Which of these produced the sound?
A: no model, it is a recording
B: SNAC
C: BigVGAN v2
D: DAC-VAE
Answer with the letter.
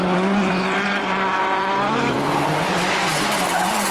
C